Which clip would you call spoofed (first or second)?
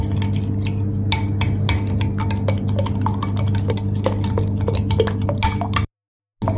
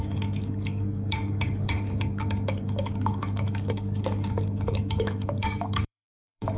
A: second